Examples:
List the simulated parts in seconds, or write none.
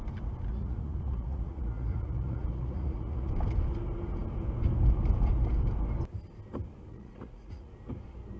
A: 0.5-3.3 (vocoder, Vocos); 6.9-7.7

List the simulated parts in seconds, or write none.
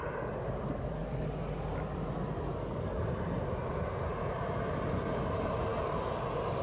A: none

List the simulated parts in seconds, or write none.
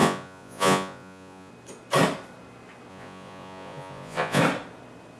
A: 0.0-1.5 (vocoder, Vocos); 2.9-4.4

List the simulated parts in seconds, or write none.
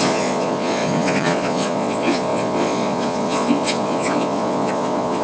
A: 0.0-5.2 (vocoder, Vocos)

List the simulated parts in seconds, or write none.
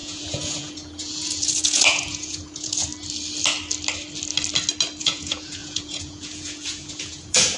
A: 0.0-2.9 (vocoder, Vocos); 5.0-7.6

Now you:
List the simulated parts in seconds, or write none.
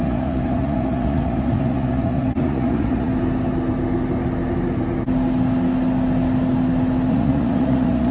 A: 0.0-3.1 (vocoder, Vocos); 7.1-8.1